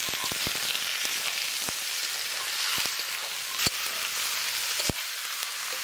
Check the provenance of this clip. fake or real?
real